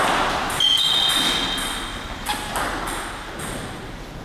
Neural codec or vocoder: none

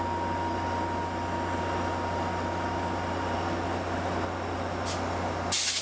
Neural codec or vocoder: none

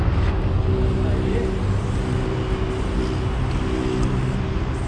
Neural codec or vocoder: none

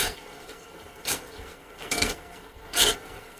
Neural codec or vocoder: codec, SNAC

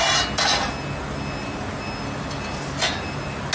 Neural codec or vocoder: none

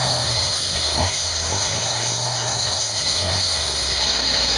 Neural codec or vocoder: codec, SNAC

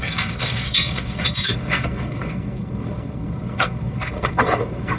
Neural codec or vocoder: codec, SNAC